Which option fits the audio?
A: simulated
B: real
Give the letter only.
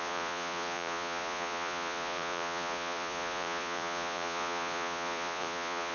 A